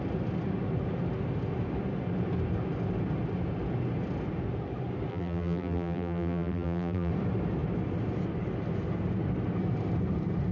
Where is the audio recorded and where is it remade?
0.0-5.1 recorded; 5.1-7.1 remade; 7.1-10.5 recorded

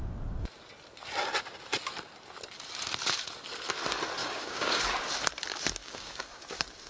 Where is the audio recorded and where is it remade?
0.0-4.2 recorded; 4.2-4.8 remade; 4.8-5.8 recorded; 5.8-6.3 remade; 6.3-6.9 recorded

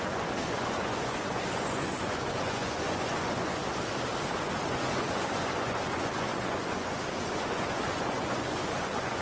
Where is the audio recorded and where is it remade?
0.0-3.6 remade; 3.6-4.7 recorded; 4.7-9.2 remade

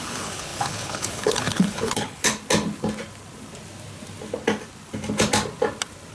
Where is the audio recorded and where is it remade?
0.0-2.3 remade; 2.3-6.1 recorded